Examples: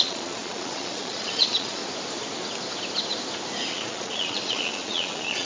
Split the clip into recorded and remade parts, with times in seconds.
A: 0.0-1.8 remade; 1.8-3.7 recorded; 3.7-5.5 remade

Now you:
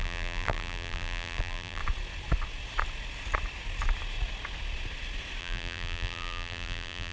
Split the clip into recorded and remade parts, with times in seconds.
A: 0.0-1.8 remade; 1.8-5.4 recorded; 5.4-7.1 remade